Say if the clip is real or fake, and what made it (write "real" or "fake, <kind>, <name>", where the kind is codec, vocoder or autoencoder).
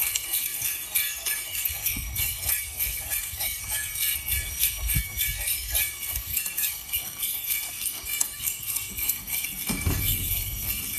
fake, codec, SNAC